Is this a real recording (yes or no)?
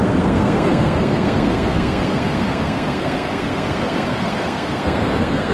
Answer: no